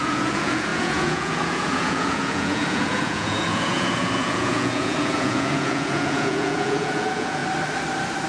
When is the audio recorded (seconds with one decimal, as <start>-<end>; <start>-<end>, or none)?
7.4-8.3